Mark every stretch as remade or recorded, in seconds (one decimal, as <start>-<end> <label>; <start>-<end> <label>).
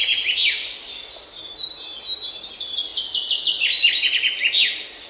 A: 0.0-5.1 recorded